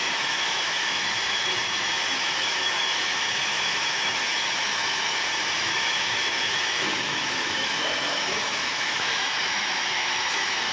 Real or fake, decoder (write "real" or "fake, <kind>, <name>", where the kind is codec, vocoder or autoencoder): fake, autoencoder, DAC-VAE